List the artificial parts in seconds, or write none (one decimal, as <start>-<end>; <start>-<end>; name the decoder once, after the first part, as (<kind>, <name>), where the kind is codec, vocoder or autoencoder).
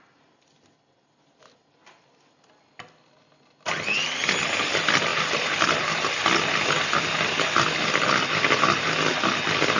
none